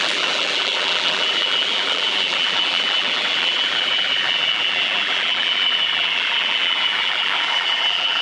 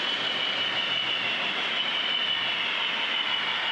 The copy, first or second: first